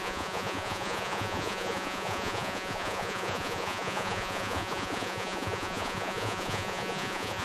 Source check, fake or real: fake